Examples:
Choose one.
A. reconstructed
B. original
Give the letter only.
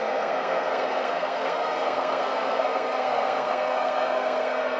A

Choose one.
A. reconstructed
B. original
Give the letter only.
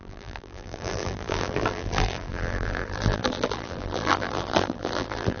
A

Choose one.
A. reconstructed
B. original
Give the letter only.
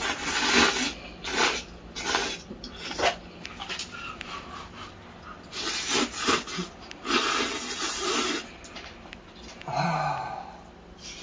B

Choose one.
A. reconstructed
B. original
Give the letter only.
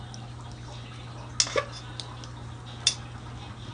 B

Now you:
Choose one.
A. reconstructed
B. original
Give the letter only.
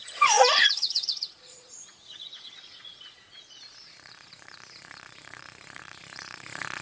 A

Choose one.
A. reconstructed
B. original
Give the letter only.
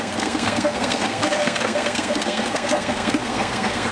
A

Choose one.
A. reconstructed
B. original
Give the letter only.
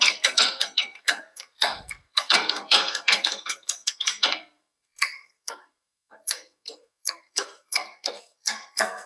A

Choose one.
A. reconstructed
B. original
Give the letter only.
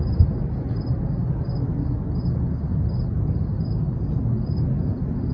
B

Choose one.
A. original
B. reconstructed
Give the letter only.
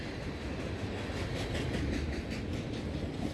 A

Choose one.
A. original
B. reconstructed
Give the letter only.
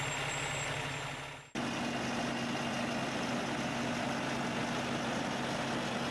A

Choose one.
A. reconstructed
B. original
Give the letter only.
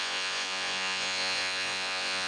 A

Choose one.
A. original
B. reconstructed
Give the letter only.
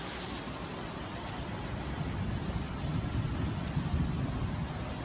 A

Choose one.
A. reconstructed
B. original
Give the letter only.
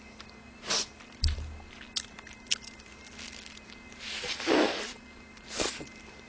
B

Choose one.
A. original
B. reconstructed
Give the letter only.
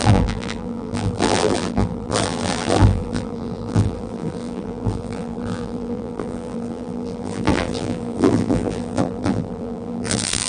B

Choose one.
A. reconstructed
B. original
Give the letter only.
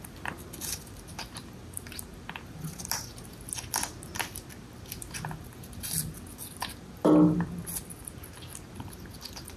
B